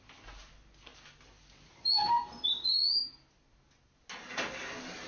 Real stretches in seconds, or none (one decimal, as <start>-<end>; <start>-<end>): 0.0-5.1